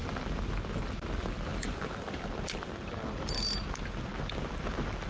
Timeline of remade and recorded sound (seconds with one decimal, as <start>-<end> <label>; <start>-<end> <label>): 0.0-5.1 recorded